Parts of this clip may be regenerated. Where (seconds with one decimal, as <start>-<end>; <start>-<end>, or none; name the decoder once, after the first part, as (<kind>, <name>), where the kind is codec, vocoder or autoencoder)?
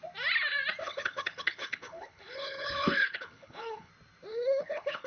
0.8-3.9 (codec, HILCodec); 4.3-5.1